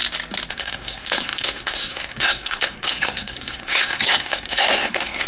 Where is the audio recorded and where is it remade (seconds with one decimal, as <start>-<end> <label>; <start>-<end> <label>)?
0.0-0.5 recorded; 0.5-5.3 remade